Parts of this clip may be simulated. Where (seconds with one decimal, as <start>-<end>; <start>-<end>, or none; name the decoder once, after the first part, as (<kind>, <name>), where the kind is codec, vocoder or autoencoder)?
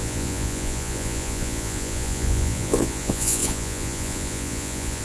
0.0-5.0 (vocoder, Vocos)